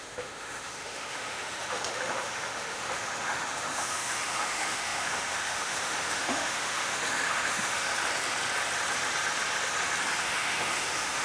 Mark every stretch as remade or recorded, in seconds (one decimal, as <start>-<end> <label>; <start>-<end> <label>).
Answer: 0.0-7.9 remade; 7.9-10.2 recorded; 10.2-11.2 remade